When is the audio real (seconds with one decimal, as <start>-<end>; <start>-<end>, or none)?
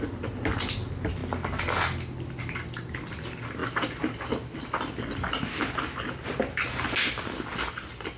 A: 0.0-8.2